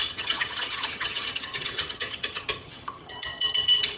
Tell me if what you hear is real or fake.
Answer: fake